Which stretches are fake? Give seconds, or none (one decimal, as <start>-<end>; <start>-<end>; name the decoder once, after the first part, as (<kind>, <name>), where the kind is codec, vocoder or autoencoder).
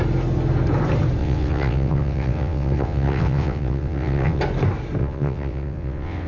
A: 1.2-4.4 (vocoder, WaveNeXt); 5.0-6.3